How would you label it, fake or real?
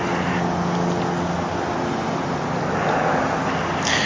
real